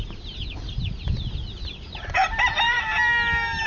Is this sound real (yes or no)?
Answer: yes